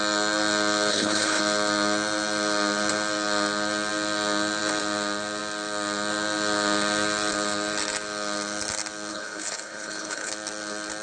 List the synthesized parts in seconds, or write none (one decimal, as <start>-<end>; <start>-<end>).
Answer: 0.9-1.4; 9.1-10.3